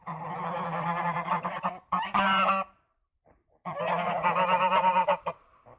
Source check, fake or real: fake